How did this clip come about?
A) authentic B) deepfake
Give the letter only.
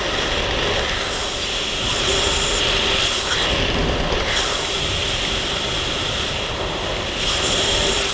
A